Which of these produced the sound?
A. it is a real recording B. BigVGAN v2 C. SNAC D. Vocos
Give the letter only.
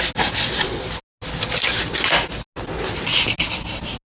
A